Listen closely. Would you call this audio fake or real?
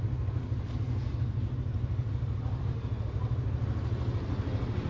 real